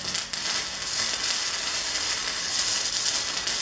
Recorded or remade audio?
recorded